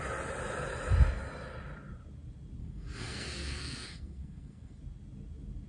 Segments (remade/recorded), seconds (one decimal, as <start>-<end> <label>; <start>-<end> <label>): 0.0-2.6 recorded; 2.6-4.8 remade; 4.8-5.7 recorded